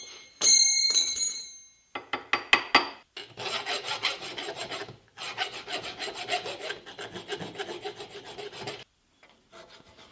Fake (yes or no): no